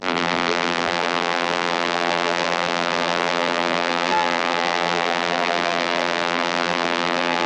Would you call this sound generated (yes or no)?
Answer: yes